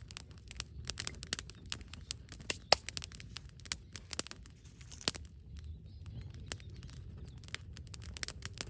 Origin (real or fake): real